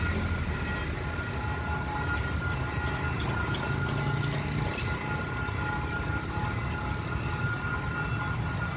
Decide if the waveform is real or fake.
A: real